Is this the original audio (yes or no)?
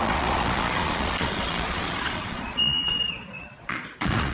no